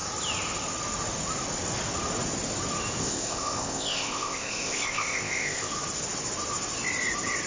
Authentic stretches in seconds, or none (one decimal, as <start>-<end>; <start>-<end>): 0.0-3.0; 5.7-7.5